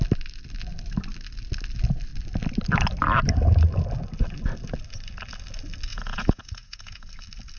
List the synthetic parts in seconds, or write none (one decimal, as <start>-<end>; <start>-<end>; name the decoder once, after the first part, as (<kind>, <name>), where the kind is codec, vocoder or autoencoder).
5.9-7.1 (vocoder, Vocos)